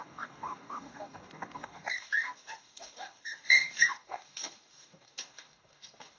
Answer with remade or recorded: remade